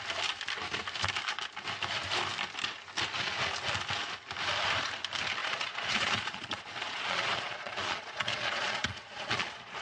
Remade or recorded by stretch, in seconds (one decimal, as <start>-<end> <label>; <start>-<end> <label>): 0.0-5.4 recorded; 5.4-9.8 remade